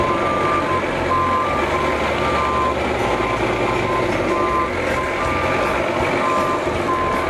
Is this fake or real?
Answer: real